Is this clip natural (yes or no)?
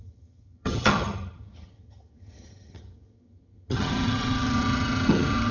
no